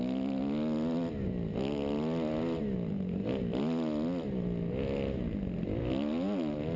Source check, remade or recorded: recorded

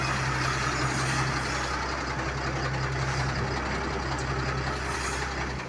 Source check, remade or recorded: recorded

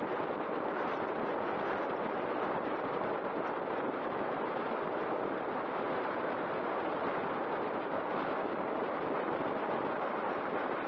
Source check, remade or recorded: recorded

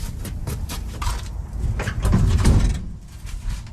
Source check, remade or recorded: recorded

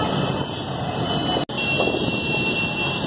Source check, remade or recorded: recorded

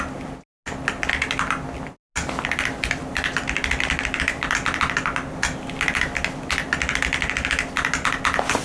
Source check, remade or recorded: recorded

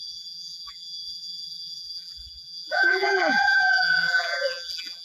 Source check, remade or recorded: remade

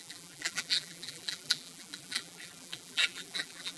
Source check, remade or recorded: remade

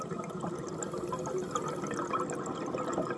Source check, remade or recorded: recorded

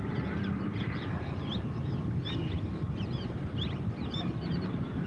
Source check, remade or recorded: remade